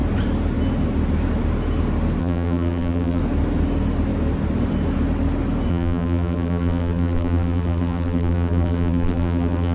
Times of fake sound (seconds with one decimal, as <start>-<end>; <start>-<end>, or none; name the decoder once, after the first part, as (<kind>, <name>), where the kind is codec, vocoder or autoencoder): 2.2-3.2 (vocoder, BigVGAN v2); 5.7-9.7